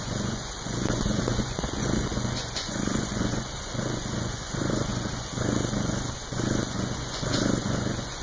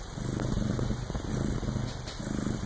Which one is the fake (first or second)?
first